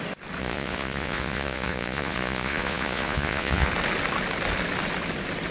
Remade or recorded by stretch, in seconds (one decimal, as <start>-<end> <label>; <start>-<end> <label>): 0.0-0.4 recorded; 0.4-3.7 remade; 3.7-5.5 recorded